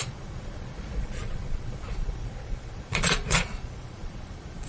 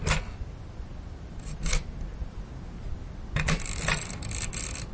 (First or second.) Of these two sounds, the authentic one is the second